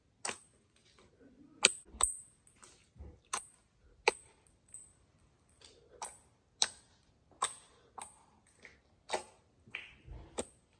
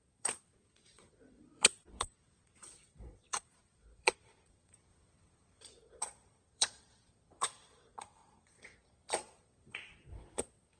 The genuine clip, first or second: first